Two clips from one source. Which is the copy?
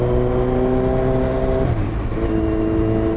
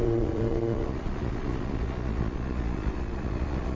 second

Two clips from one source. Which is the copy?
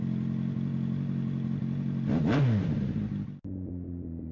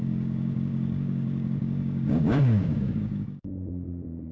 second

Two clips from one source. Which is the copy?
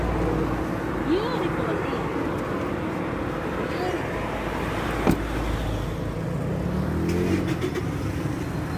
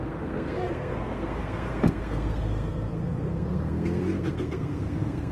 second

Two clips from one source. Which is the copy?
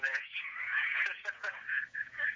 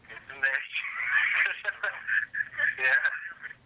first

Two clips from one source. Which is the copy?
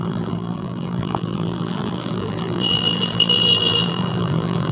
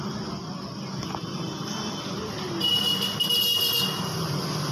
first